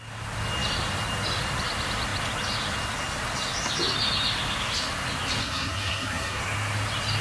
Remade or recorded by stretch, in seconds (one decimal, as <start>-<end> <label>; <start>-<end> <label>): 0.0-5.4 recorded; 5.4-6.4 remade; 6.4-7.2 recorded